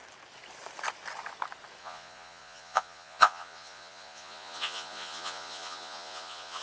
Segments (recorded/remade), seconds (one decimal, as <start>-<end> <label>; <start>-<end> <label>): 0.0-1.8 recorded; 1.8-6.6 remade